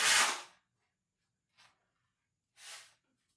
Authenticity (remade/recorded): recorded